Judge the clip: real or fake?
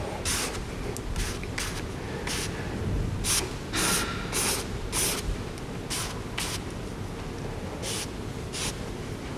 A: real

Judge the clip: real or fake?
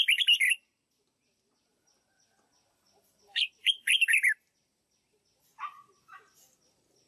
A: real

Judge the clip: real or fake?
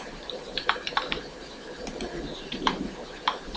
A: fake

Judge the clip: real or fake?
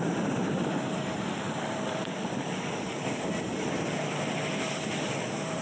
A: fake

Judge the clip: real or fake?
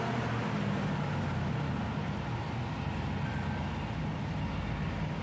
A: real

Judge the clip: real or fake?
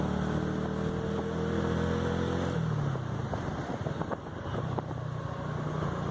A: real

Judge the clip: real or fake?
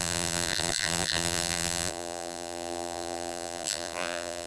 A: fake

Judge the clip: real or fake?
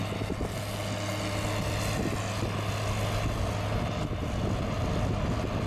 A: real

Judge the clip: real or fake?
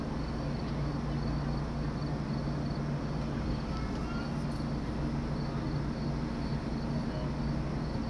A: real